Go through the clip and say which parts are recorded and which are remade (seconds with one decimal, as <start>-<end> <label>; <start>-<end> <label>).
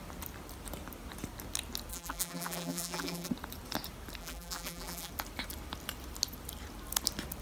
0.0-1.9 recorded; 1.9-3.3 remade; 3.3-4.2 recorded; 4.2-5.1 remade; 5.1-7.4 recorded